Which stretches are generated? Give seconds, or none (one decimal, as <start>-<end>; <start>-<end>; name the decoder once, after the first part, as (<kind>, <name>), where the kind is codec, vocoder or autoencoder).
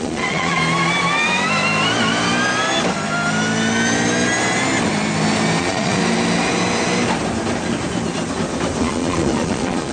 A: 0.0-0.6 (vocoder, Vocos); 5.6-6.0; 8.8-9.9